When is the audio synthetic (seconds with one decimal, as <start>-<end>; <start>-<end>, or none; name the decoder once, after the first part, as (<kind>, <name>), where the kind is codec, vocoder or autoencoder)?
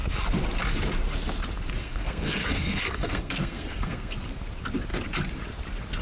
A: 1.8-4.1 (codec, SNAC)